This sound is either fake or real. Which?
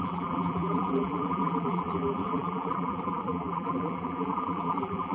fake